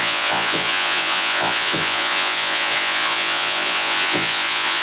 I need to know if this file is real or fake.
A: fake